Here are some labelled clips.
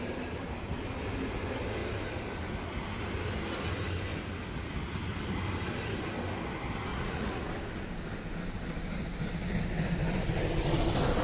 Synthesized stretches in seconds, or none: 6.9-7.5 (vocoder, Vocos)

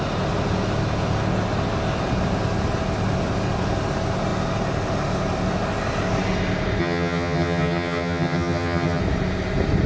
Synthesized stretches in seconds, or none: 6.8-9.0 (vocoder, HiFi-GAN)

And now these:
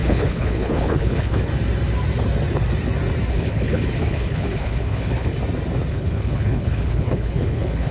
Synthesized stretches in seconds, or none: 0.0-1.5 (codec, HILCodec); 3.3-5.3; 5.9-7.9

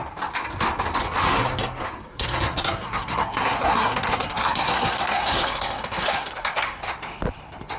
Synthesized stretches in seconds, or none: 2.1-6.8 (codec, SNAC)